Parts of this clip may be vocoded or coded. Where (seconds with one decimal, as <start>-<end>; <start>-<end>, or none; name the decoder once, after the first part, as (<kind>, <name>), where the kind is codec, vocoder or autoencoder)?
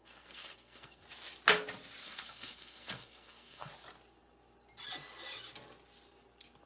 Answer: 0.0-1.0 (codec, SNAC); 2.0-3.7